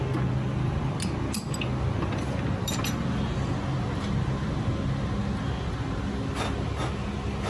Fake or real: real